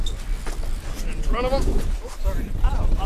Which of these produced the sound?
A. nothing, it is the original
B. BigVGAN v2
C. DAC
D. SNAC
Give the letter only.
A